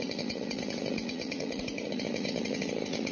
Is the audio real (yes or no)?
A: no